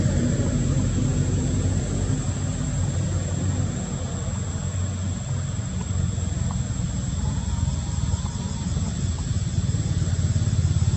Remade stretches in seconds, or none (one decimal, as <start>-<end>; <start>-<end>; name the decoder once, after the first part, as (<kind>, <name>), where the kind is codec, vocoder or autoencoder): none